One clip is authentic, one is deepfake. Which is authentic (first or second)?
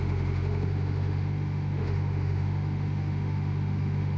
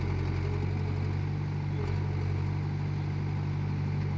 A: second